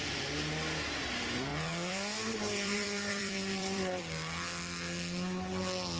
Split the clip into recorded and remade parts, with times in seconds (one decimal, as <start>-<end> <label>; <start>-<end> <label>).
0.0-1.5 recorded; 1.5-4.0 remade; 4.0-6.0 recorded